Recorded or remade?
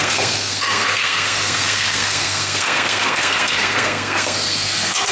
remade